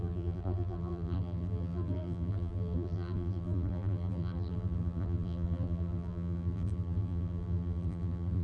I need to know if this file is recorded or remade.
remade